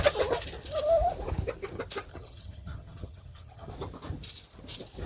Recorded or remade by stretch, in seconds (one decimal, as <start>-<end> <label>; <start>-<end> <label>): 0.0-2.1 recorded; 2.1-3.7 remade; 3.7-5.1 recorded